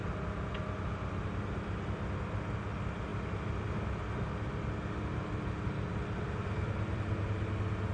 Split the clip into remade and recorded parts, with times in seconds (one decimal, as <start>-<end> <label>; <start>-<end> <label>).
0.0-7.9 recorded